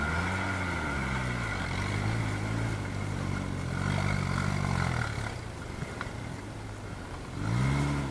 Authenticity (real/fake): real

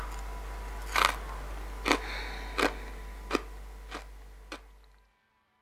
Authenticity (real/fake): real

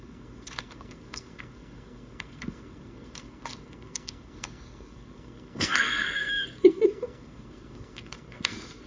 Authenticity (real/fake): fake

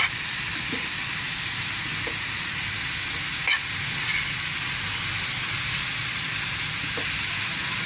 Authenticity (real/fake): real